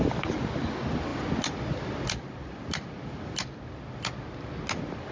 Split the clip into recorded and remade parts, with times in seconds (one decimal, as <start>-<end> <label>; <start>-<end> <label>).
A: 0.0-5.1 recorded